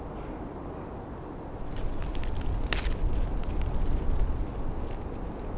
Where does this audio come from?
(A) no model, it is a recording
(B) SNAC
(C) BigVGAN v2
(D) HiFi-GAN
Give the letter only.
A